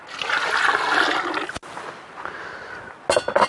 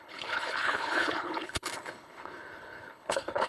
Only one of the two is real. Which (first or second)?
first